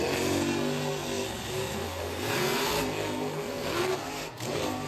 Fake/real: fake